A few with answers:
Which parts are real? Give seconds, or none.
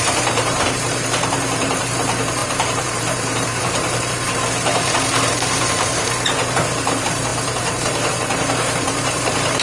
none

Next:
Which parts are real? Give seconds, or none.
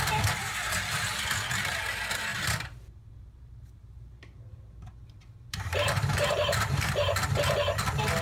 0.0-0.4; 1.1-2.3; 7.2-8.2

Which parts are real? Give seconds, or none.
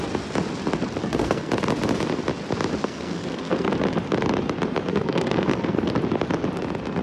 0.0-1.0; 1.5-2.8; 3.7-4.9; 5.9-7.0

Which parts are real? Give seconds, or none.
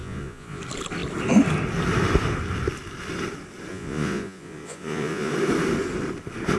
0.6-3.7; 5.3-6.6